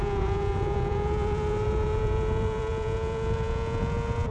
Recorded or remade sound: remade